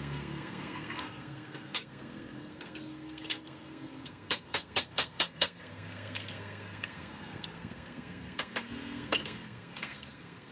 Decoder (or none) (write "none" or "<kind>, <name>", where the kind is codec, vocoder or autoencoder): codec, SNAC